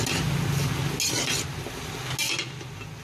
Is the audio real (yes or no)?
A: yes